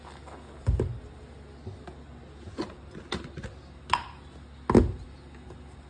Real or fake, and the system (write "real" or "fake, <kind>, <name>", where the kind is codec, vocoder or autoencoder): real